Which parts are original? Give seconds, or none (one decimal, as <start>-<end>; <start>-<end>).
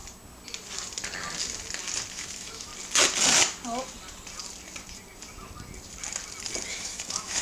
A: 0.0-2.1; 2.7-6.7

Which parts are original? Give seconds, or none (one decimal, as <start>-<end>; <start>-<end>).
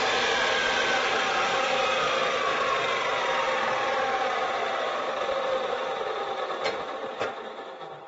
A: 0.0-8.1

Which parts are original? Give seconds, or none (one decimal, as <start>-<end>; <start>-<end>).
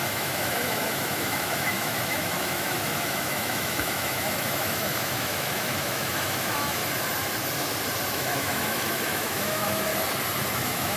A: 6.8-8.1; 9.9-10.5